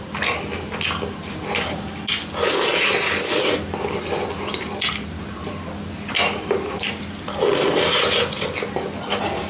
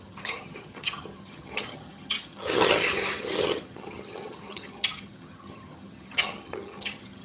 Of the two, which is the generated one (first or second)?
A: second